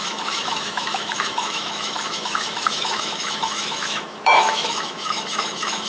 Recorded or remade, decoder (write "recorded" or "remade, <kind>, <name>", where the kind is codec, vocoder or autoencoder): remade, autoencoder, DAC-VAE